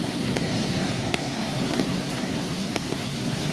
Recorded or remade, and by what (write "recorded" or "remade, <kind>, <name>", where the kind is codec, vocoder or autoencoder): remade, codec, SNAC